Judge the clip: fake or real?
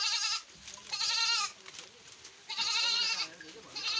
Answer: real